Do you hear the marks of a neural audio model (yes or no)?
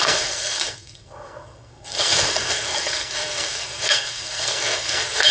yes